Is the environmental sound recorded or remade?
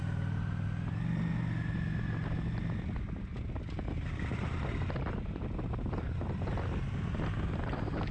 recorded